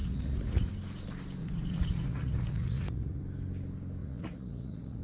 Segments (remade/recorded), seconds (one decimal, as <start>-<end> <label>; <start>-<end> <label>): 0.0-0.7 remade; 0.7-1.4 recorded; 1.4-3.2 remade; 3.2-4.0 recorded; 4.0-5.0 remade